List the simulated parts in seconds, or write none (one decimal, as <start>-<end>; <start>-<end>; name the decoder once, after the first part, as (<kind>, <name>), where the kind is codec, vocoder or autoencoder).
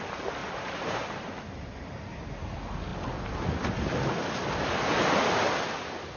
0.4-1.3 (vocoder, BigVGAN v2)